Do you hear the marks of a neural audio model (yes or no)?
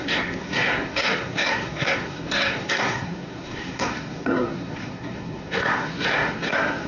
yes